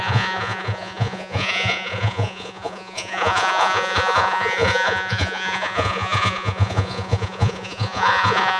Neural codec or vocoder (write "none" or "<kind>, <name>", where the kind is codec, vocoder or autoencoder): vocoder, Vocos